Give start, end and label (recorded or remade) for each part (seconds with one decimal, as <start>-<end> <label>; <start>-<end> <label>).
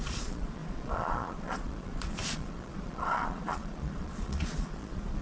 0.0-5.2 remade